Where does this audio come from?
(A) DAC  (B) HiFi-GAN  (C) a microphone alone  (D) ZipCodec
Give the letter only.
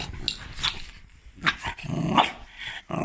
C